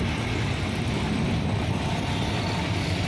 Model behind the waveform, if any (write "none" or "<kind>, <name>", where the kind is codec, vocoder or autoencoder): none